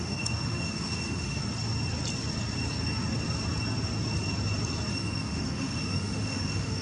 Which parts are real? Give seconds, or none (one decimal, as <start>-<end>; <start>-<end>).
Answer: 1.4-4.9